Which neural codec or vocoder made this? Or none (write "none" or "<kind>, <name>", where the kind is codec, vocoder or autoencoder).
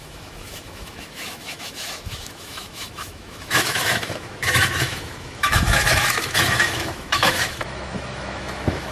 autoencoder, DAC-VAE